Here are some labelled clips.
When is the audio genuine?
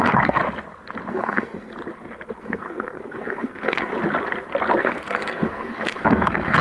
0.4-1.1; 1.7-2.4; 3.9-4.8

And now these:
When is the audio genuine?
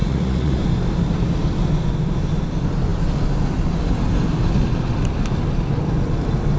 0.6-6.6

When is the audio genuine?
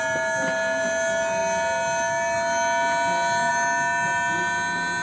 0.0-5.0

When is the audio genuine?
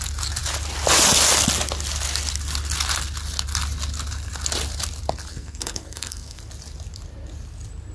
0.0-5.3; 6.4-7.9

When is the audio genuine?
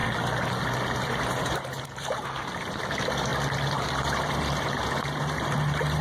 0.0-1.2; 3.3-3.9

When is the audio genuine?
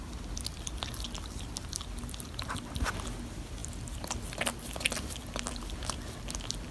0.0-6.7